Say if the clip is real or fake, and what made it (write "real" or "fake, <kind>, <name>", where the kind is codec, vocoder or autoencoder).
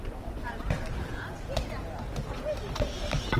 real